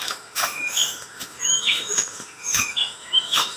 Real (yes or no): no